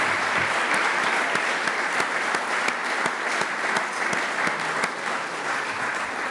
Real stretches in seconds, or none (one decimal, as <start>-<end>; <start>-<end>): 2.8-5.8